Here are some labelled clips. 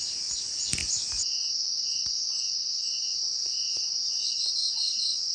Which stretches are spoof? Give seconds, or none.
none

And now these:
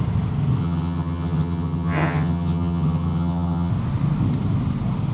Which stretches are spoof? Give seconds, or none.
0.6-3.7

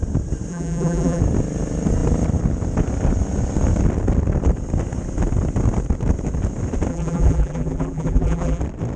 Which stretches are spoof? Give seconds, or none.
0.5-1.2; 6.9-8.6

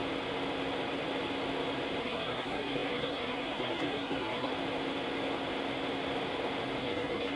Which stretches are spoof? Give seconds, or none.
2.0-4.5; 6.8-7.4